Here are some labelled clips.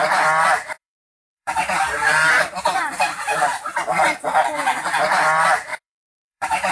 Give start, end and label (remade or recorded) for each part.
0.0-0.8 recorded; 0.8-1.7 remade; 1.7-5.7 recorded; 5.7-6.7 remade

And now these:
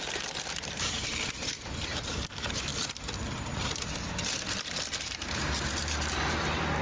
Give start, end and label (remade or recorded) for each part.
0.0-2.7 remade; 2.7-5.0 recorded; 5.0-6.8 remade